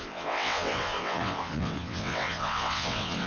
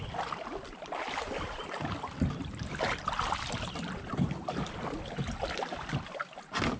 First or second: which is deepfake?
first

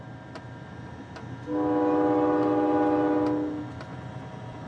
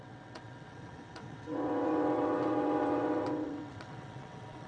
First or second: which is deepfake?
second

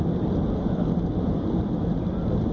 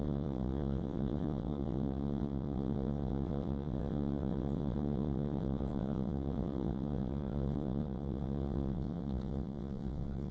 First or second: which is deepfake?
second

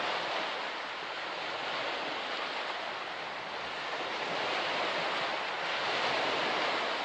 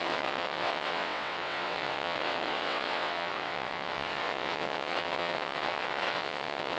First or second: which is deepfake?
second